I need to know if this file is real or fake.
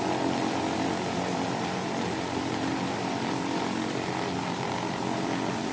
fake